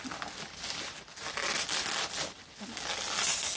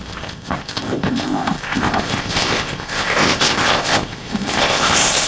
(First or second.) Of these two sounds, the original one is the first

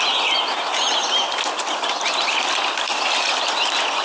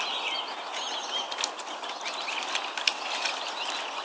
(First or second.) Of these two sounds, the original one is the second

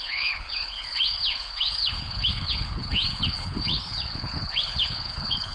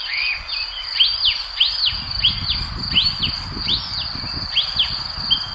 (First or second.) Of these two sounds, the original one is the second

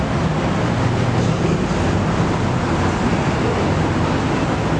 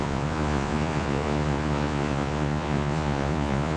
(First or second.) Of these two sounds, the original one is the first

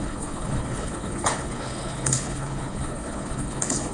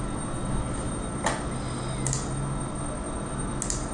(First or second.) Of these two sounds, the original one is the second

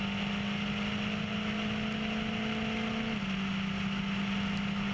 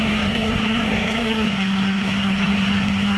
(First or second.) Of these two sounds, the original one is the first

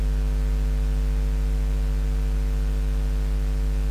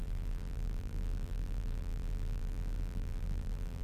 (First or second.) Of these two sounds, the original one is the first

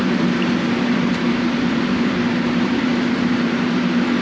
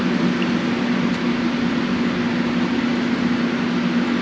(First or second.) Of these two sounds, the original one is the second